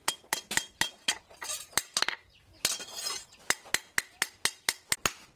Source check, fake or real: real